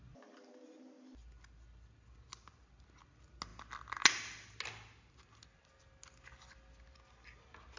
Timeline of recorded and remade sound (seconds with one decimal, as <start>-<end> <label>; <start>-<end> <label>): 0.0-7.8 recorded